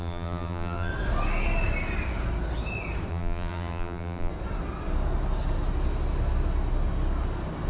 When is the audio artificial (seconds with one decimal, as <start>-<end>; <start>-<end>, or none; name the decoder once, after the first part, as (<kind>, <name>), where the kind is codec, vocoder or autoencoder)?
0.0-0.9 (vocoder, BigVGAN v2); 3.1-4.3